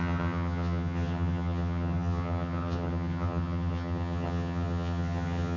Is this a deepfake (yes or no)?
yes